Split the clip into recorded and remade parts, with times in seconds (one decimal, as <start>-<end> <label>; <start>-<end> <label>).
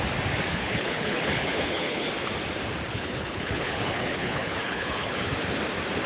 0.0-0.5 recorded; 0.5-2.1 remade; 2.1-2.9 recorded; 2.9-5.3 remade; 5.3-6.1 recorded